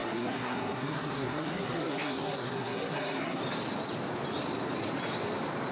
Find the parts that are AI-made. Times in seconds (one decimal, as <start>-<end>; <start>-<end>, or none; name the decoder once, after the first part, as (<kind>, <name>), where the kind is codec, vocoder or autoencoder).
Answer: 0.0-3.4 (codec, SNAC)